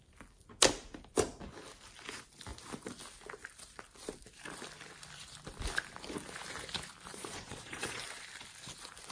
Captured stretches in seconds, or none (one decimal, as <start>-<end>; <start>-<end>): 0.0-7.1; 8.0-9.1